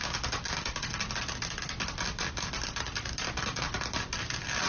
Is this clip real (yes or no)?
yes